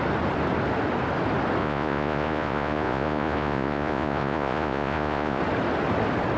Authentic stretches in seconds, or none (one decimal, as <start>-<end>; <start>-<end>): 0.0-1.6; 5.4-6.4